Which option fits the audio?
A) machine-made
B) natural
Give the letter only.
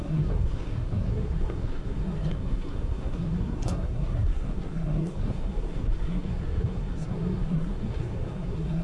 A